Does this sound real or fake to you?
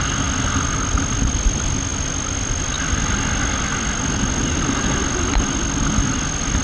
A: real